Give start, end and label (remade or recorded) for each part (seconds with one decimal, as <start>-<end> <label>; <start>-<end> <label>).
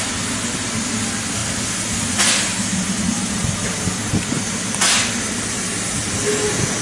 0.0-6.8 recorded